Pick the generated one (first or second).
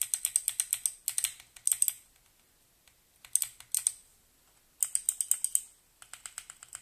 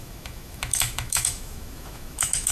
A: second